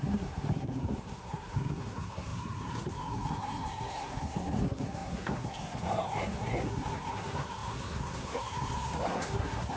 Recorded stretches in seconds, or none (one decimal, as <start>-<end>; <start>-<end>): none